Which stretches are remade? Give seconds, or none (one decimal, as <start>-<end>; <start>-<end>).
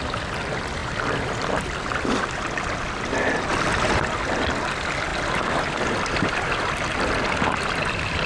none